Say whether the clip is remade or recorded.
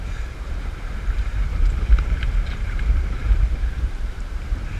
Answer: remade